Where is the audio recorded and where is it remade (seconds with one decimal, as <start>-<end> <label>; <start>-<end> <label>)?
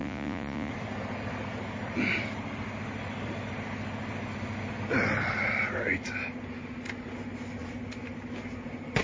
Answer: 0.0-0.7 remade; 0.7-9.0 recorded